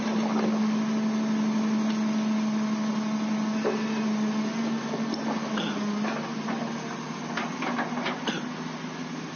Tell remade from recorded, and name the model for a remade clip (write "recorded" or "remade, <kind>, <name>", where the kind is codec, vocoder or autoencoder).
recorded